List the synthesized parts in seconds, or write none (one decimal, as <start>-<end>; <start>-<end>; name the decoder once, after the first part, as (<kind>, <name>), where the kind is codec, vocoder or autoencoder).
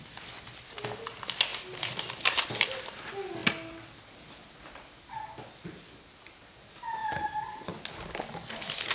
none